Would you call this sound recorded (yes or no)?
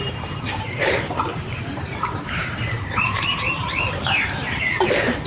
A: no